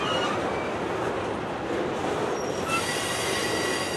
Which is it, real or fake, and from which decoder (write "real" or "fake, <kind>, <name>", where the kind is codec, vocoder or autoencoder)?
real